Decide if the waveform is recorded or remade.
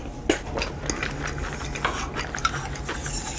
recorded